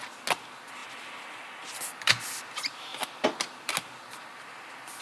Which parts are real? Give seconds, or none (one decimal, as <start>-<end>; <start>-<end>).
0.0-5.0